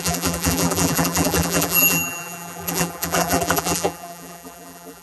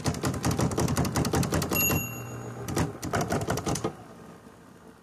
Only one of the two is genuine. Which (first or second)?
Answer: second